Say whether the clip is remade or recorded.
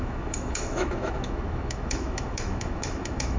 remade